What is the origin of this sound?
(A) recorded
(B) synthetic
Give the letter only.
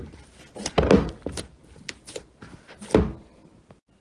A